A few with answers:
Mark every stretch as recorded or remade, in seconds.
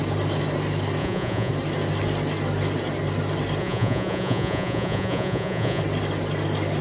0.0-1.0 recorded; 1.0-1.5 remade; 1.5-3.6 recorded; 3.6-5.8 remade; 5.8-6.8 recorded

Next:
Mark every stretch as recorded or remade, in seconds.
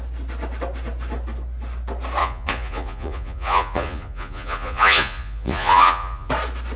0.0-2.2 recorded; 2.2-6.3 remade; 6.3-6.8 recorded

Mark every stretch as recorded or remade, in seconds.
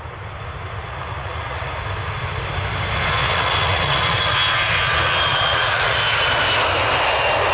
0.0-0.8 recorded; 0.8-1.7 remade; 1.7-3.2 recorded; 3.2-4.4 remade; 4.4-5.3 recorded; 5.3-6.0 remade; 6.0-7.5 recorded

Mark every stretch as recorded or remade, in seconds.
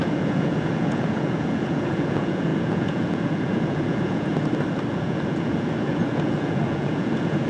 0.0-4.3 remade; 4.3-4.9 recorded; 4.9-7.5 remade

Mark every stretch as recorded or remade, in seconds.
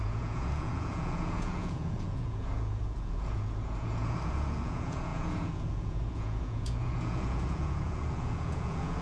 0.0-9.0 remade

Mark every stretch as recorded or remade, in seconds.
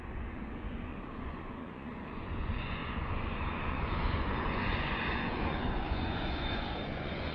0.0-7.3 remade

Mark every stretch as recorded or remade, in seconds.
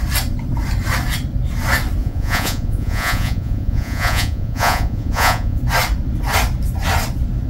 0.0-2.0 recorded; 2.0-5.6 remade; 5.6-7.5 recorded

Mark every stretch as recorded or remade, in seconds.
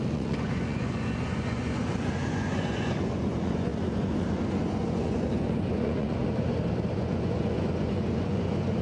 0.0-6.2 remade; 6.2-6.9 recorded; 6.9-8.8 remade